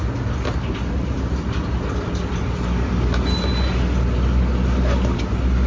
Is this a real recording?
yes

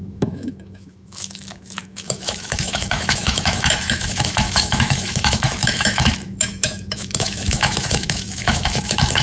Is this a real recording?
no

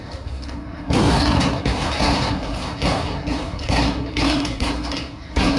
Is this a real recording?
no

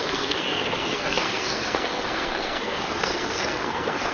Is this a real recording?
no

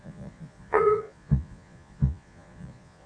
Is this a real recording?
no